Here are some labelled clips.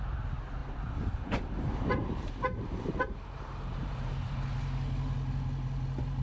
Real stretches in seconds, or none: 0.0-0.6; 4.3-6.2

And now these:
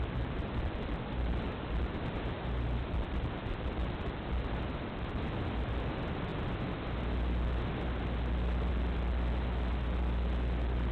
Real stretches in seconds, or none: 0.0-10.9

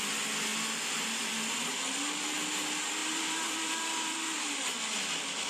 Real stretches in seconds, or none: 0.0-3.0; 4.6-5.5

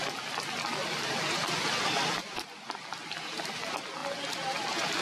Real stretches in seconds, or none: 0.0-5.0